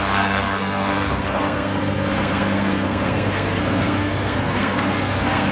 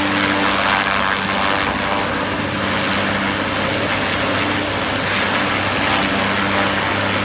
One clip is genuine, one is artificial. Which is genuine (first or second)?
second